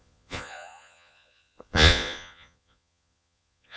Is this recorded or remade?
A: remade